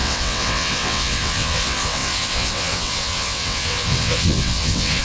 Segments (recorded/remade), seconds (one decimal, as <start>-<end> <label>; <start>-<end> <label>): 0.0-5.0 remade